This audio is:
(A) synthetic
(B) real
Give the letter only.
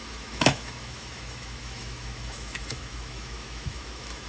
A